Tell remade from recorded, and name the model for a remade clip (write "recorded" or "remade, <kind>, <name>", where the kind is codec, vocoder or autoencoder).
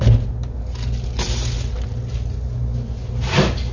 recorded